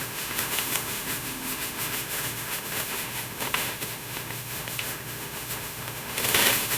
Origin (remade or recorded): remade